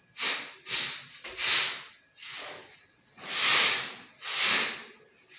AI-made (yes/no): no